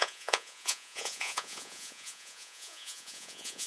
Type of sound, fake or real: fake